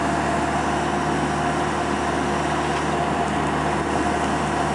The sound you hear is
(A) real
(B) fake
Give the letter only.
A